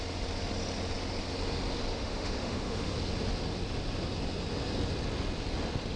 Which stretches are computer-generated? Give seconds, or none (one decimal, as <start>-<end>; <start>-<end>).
1.9-2.9